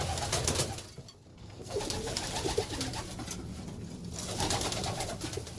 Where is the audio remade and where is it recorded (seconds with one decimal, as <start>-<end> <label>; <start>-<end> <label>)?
0.0-1.3 recorded; 1.3-1.8 remade; 1.8-5.6 recorded

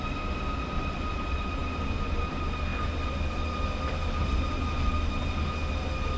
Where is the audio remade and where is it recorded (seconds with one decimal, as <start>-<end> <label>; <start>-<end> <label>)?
0.0-6.2 recorded

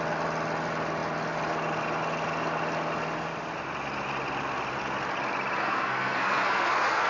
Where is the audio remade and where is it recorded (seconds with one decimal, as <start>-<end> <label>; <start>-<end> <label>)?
0.0-5.6 recorded; 5.6-7.1 remade

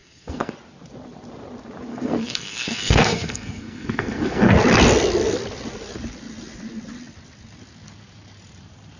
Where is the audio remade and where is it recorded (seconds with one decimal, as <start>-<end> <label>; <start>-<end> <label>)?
0.0-0.5 remade; 0.5-1.9 recorded; 1.9-4.5 remade; 4.5-9.0 recorded